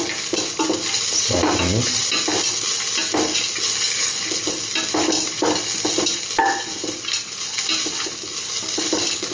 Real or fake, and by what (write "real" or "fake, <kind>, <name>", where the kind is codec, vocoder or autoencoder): real